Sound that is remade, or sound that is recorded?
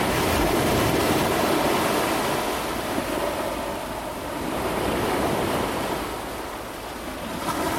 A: recorded